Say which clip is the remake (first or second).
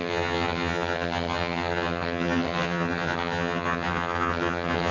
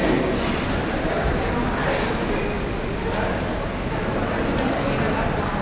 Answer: first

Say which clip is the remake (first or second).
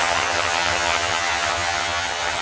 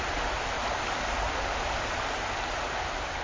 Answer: first